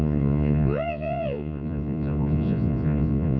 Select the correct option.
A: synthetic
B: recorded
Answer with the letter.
A